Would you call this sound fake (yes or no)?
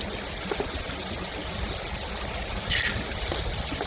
no